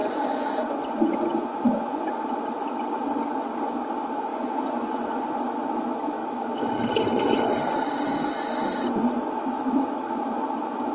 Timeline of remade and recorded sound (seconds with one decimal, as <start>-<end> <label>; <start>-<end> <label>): 0.0-2.1 remade; 2.1-4.3 recorded; 4.3-5.4 remade; 5.4-10.9 recorded